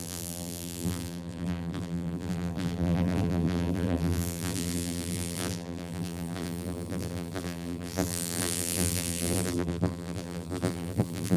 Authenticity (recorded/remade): remade